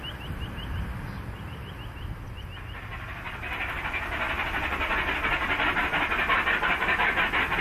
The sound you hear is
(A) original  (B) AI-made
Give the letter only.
A